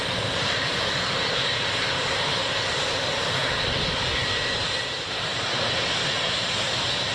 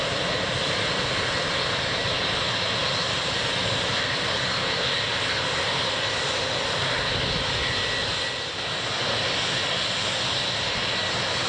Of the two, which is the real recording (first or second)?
second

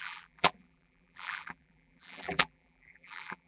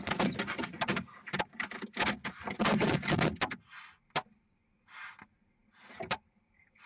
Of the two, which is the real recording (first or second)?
second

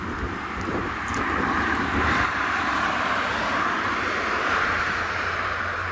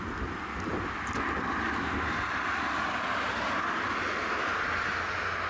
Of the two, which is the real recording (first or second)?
second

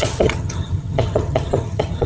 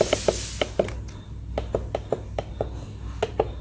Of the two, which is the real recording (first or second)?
second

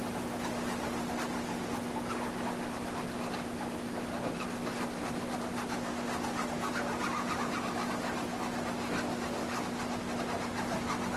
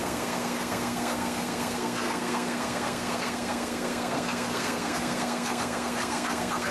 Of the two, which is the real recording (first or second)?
first